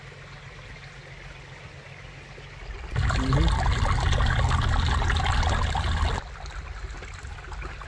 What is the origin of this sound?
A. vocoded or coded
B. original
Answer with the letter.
B